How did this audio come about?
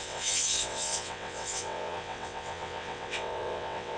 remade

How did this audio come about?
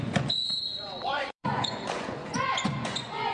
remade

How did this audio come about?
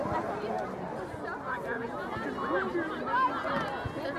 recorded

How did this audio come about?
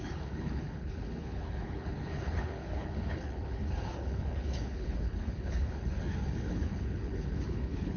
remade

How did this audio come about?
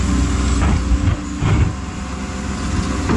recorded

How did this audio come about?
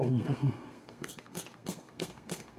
remade